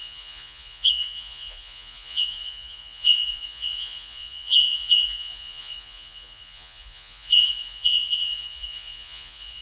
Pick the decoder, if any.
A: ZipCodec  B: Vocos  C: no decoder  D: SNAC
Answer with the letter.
B